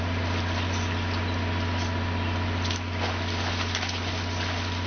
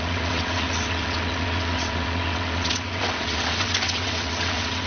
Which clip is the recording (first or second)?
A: first